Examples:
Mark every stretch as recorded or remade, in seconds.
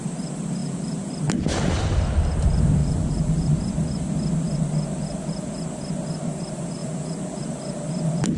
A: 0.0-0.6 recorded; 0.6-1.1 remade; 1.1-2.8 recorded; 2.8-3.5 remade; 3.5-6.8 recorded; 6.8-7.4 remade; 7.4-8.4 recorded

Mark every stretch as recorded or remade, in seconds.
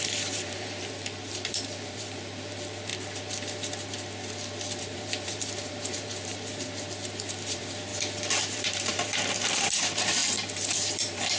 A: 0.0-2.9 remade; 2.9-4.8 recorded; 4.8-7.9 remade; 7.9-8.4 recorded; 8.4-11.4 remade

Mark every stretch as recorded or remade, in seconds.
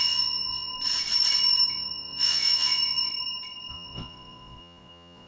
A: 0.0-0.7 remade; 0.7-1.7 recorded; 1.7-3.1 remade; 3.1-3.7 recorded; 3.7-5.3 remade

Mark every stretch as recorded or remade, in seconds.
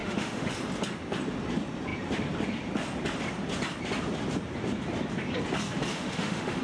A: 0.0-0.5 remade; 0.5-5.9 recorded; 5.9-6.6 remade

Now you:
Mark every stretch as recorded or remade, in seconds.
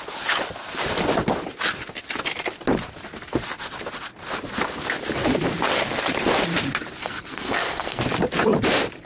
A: 0.0-7.0 recorded; 7.0-8.0 remade; 8.0-9.1 recorded